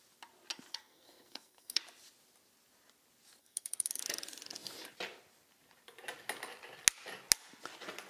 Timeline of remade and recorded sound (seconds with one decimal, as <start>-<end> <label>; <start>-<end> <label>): 0.0-0.7 recorded; 0.7-1.8 remade; 1.8-3.4 recorded; 3.4-4.0 remade; 4.0-8.1 recorded